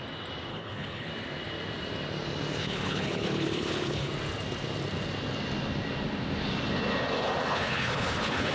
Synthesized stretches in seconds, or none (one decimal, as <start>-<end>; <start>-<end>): 0.5-1.1; 2.6-4.1; 7.5-8.5